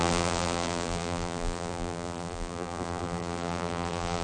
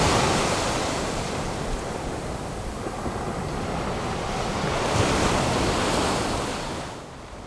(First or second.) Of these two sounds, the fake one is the first